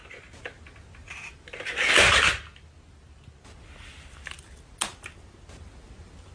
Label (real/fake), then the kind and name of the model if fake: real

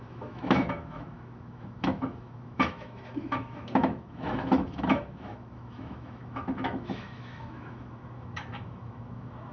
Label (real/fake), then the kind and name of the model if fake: fake, autoencoder, DAC-VAE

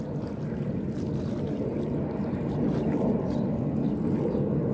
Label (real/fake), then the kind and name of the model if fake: real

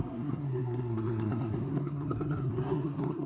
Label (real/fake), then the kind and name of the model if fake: fake, codec, SNAC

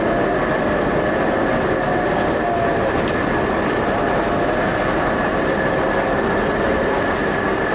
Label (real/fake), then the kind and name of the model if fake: real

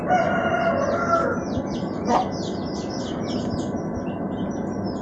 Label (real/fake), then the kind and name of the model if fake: real